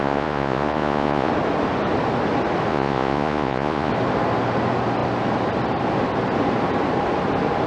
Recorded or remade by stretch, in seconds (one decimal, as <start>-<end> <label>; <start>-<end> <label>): 0.0-1.3 remade; 1.3-2.7 recorded; 2.7-3.9 remade; 3.9-7.7 recorded